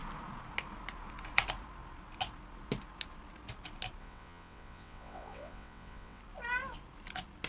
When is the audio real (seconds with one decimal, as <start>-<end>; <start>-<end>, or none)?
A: 0.0-4.0; 6.2-7.5